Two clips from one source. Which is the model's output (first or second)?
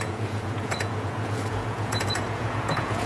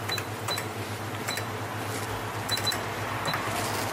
first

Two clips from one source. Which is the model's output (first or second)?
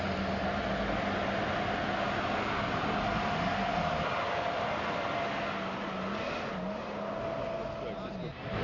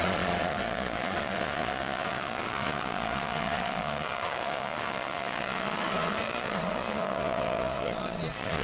second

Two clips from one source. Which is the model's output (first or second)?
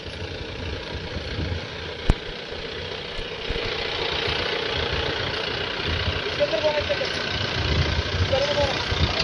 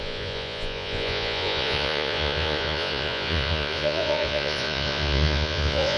second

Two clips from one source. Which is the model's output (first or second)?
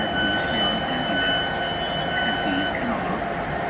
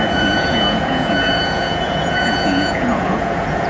second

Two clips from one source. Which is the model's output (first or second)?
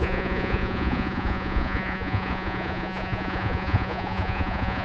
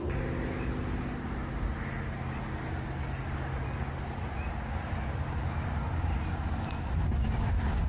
first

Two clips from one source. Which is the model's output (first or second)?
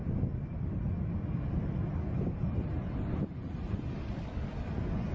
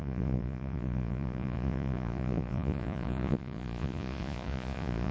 second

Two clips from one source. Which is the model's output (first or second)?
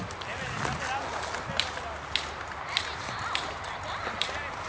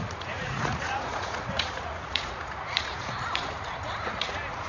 second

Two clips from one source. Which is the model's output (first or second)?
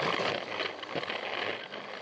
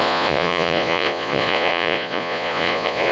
second